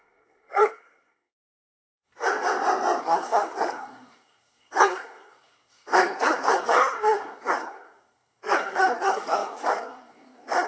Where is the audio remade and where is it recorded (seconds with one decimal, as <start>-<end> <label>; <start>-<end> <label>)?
0.0-2.1 remade; 2.1-3.0 recorded; 3.0-10.7 remade

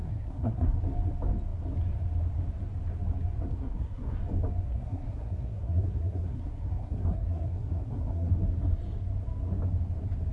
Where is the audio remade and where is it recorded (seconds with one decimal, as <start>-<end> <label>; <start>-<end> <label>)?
0.0-0.8 remade; 0.8-3.5 recorded; 3.5-4.2 remade; 4.2-4.7 recorded; 4.7-8.3 remade; 8.3-10.3 recorded

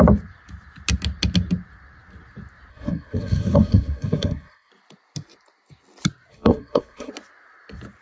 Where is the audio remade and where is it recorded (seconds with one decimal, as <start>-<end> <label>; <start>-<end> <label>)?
0.0-2.7 recorded; 2.7-4.7 remade; 4.7-6.3 recorded; 6.3-7.1 remade; 7.1-8.0 recorded

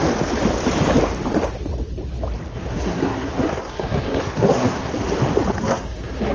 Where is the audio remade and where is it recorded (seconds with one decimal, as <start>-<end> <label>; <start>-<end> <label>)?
0.0-2.5 recorded; 2.5-4.9 remade; 4.9-5.6 recorded; 5.6-6.3 remade

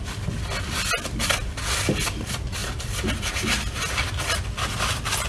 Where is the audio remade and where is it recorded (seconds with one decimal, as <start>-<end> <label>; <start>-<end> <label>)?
0.0-5.3 recorded